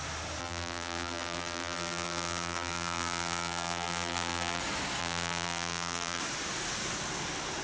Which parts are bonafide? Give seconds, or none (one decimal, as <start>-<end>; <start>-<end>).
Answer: 0.0-0.4; 4.6-5.0; 6.2-7.6